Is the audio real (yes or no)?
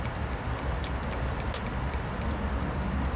yes